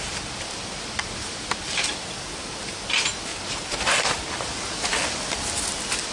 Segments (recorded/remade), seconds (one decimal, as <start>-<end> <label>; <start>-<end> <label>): 0.0-3.3 recorded; 3.3-4.0 remade; 4.0-6.1 recorded